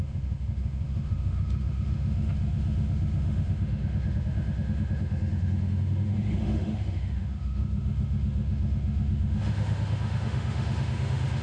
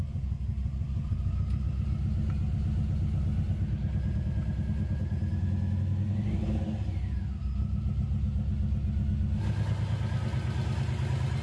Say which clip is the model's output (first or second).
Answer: first